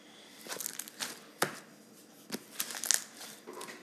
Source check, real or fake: real